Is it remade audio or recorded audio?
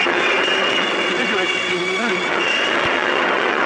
remade